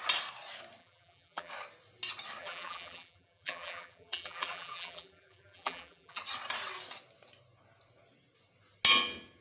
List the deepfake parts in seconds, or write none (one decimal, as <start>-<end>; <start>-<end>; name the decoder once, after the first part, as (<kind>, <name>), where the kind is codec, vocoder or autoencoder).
0.8-1.5 (vocoder, BigVGAN v2); 2.4-6.2